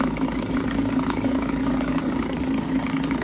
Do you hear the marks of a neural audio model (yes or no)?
yes